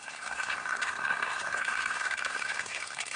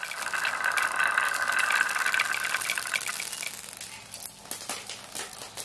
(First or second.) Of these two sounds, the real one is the second